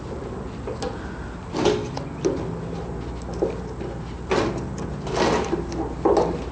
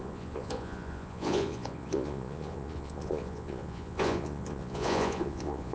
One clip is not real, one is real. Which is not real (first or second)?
second